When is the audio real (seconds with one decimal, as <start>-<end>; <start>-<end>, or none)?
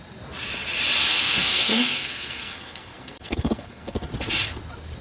0.0-1.1; 4.1-5.0